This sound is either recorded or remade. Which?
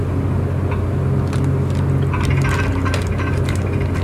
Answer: recorded